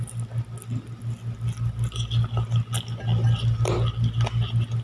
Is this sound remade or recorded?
recorded